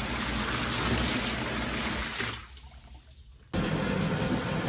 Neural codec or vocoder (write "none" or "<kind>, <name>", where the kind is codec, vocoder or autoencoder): none